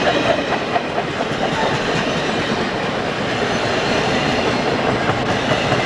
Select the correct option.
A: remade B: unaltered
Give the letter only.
A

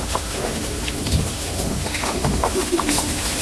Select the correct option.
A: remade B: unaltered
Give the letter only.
A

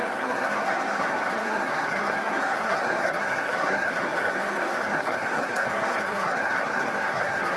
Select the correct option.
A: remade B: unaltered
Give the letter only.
A